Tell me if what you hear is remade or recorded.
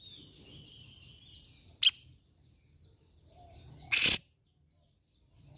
recorded